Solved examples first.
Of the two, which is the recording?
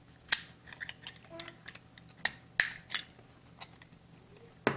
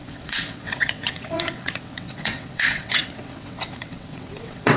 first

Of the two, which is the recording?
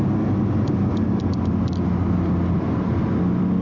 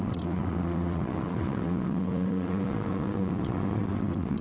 first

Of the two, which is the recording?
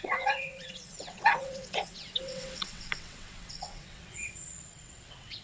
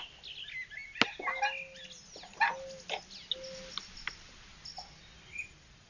second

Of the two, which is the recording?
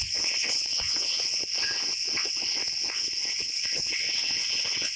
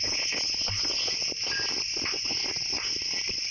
second